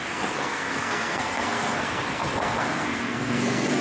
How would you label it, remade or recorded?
remade